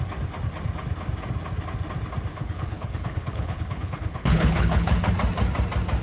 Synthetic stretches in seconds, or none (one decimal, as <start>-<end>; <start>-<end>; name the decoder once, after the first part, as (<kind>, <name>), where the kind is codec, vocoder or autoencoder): 2.3-5.1 (codec, HILCodec)